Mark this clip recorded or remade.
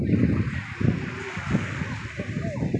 recorded